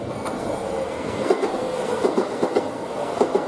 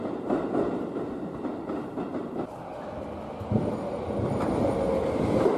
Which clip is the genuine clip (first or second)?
second